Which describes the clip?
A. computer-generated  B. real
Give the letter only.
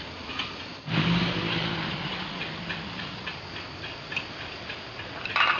B